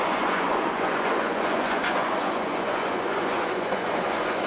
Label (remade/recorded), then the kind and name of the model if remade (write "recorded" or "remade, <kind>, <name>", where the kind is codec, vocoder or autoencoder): remade, vocoder, Vocos